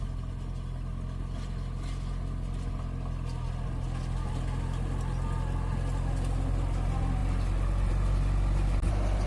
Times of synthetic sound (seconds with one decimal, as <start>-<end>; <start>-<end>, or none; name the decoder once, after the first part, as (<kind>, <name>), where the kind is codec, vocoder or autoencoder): none